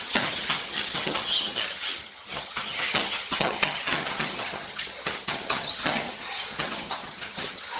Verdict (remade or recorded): remade